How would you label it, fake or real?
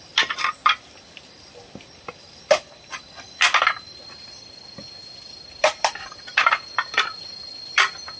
real